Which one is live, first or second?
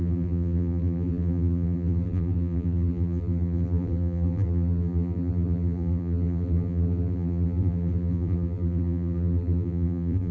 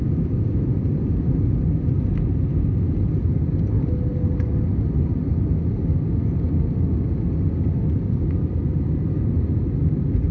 second